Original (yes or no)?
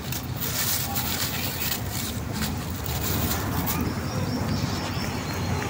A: yes